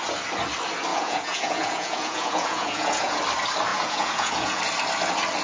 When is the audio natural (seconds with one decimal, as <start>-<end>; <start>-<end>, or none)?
0.0-0.9; 3.2-3.7; 4.6-5.4